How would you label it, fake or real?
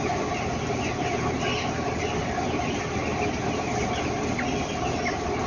real